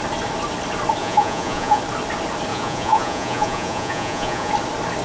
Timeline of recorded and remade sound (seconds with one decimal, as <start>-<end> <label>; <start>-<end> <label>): 0.0-1.0 recorded; 1.0-1.8 remade; 1.8-2.5 recorded; 2.5-4.5 remade; 4.5-5.0 recorded